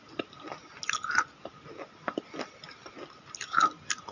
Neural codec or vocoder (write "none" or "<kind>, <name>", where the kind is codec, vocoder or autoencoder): none